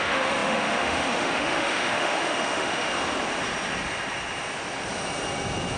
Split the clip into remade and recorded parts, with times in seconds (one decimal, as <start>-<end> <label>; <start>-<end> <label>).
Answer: 0.0-2.9 remade; 2.9-5.8 recorded